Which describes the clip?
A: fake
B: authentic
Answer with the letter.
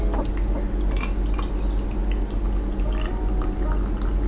B